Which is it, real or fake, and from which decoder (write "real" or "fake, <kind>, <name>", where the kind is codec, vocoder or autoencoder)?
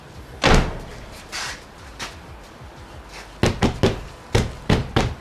real